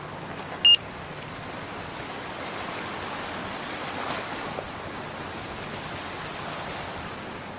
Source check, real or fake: real